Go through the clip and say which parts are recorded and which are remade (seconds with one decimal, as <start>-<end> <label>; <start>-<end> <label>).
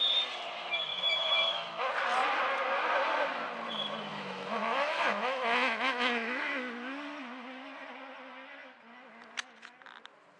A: 0.0-0.9 recorded; 0.9-1.9 remade; 1.9-4.1 recorded; 4.1-6.6 remade; 6.6-10.4 recorded